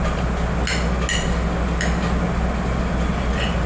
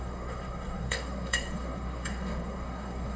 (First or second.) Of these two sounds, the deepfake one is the second